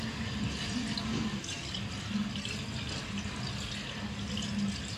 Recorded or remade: recorded